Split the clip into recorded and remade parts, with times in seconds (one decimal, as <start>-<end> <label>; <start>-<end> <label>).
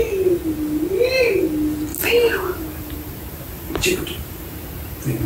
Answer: 0.0-1.9 recorded; 1.9-5.3 remade